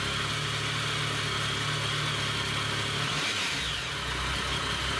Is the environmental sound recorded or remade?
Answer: recorded